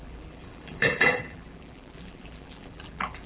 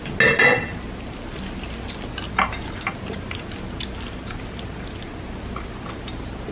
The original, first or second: second